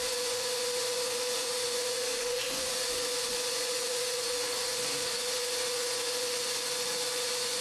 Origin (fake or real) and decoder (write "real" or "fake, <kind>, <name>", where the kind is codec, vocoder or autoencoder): fake, vocoder, Vocos